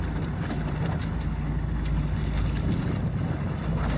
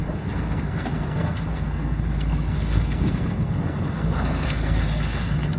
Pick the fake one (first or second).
second